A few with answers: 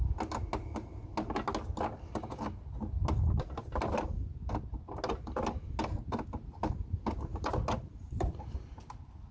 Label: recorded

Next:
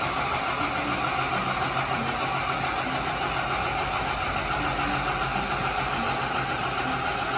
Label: recorded